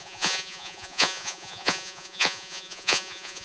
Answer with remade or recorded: remade